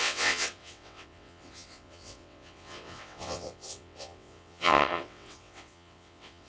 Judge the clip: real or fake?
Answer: fake